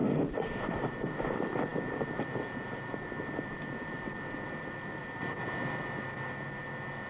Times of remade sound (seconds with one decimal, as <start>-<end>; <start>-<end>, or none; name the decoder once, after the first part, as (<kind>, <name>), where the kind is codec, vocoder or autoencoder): 0.0-1.2 (vocoder, BigVGAN v2); 1.7-5.0